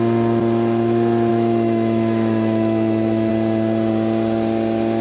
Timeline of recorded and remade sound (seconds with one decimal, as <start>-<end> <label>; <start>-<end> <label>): 0.0-1.3 recorded; 1.3-3.3 remade; 3.3-5.0 recorded